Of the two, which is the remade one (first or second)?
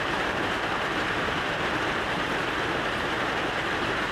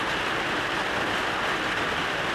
first